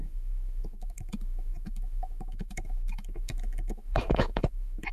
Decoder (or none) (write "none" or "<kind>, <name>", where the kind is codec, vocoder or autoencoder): autoencoder, DAC-VAE